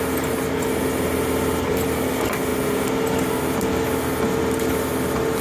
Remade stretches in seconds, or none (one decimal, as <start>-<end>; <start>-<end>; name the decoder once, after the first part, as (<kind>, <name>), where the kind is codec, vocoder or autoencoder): none